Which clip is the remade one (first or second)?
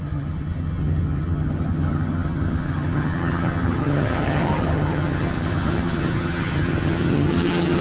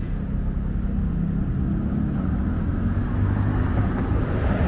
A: first